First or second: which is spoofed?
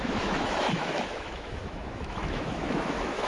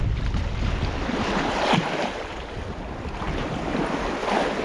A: first